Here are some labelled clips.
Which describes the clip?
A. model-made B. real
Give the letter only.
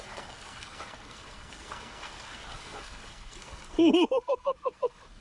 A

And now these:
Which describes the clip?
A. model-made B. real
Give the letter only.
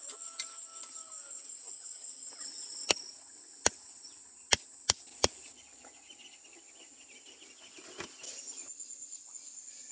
B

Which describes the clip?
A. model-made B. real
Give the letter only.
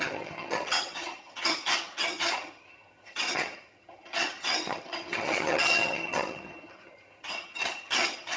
A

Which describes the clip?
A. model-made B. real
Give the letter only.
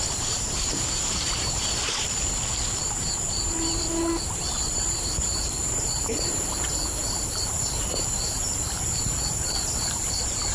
A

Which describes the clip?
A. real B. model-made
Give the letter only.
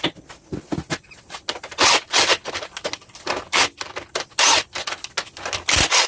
A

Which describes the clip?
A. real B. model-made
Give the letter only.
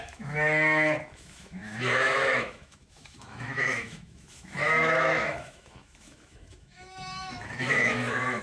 B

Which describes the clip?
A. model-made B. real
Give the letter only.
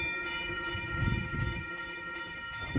A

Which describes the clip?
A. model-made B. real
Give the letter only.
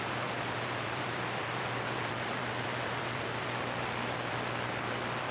A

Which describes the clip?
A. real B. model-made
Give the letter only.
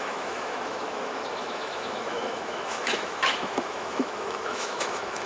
B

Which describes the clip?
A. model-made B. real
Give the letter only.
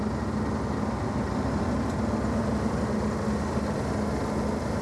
B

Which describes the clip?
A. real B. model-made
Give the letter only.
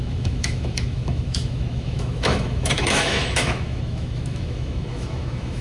B